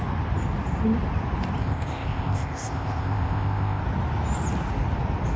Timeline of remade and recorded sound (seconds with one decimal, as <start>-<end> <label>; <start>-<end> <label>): 0.0-1.6 recorded; 1.6-3.8 remade; 3.8-5.4 recorded